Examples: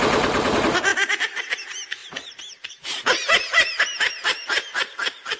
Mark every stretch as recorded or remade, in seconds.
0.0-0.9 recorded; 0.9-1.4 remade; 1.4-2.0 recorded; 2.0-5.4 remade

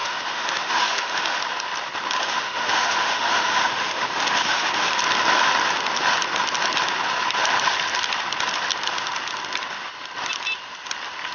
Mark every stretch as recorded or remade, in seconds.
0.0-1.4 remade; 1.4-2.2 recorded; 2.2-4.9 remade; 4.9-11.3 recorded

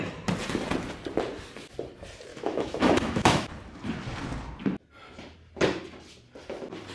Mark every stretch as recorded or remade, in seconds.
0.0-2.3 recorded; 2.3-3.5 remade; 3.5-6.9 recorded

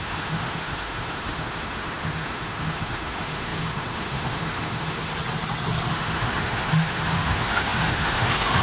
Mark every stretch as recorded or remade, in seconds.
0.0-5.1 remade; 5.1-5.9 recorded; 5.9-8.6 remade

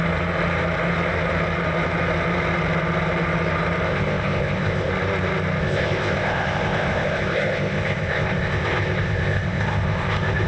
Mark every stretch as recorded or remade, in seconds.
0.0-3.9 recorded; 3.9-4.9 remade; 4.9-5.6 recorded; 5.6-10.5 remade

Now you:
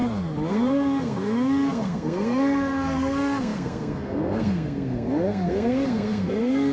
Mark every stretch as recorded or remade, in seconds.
0.0-0.5 recorded; 0.5-6.7 remade

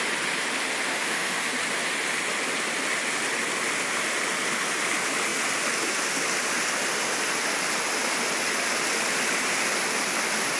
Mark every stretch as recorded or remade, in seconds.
0.0-0.9 recorded; 0.9-1.5 remade; 1.5-10.6 recorded

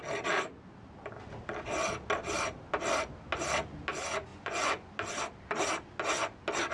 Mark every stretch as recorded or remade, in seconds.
0.0-4.3 recorded; 4.3-4.9 remade; 4.9-6.7 recorded